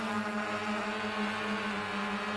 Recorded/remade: recorded